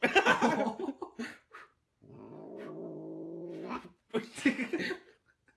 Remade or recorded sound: recorded